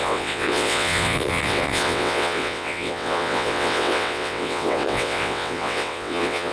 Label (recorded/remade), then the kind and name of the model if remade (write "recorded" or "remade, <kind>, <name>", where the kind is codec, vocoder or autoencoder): remade, vocoder, WaveNeXt